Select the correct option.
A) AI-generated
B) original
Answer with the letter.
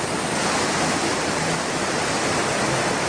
B